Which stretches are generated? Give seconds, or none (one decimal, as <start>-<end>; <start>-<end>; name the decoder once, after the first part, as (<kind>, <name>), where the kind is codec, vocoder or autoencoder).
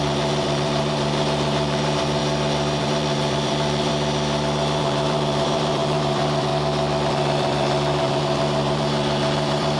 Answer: 0.0-2.2 (vocoder, BigVGAN v2); 2.8-3.9; 4.8-6.5; 7.1-9.8